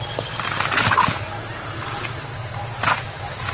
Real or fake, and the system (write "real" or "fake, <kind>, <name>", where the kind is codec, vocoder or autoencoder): real